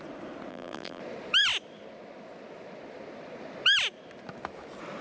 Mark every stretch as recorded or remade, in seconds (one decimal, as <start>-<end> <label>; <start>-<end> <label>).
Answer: 0.0-0.5 recorded; 0.5-1.0 remade; 1.0-5.0 recorded